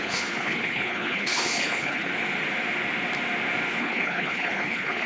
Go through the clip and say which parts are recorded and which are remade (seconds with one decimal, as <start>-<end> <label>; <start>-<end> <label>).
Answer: 0.0-2.1 remade; 2.1-3.8 recorded; 3.8-5.1 remade